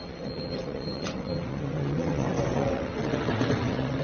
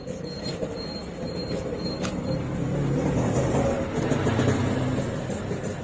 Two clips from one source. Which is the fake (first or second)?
first